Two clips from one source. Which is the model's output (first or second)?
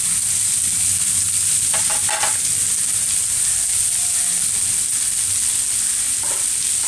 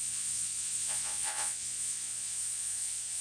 second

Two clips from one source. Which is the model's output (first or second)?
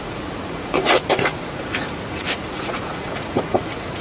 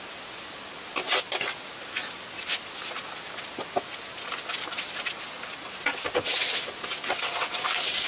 first